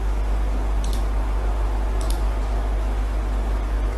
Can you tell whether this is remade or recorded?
recorded